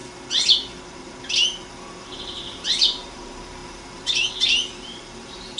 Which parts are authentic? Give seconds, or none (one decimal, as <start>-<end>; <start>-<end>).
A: 0.0-2.0